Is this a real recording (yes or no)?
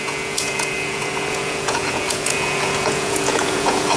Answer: no